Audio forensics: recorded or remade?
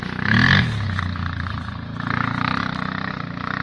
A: recorded